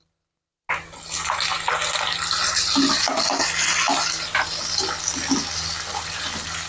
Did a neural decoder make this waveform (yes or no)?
no